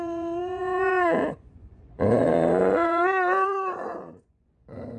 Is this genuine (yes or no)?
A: no